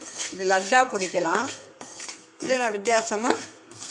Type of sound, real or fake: fake